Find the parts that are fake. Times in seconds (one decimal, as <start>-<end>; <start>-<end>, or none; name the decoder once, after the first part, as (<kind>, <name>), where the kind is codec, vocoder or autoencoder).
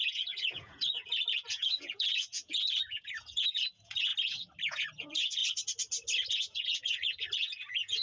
0.0-4.1 (vocoder, Vocos); 4.6-5.4; 6.3-8.0